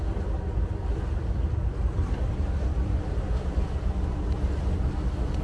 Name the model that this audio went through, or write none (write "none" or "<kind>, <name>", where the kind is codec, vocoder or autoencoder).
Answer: none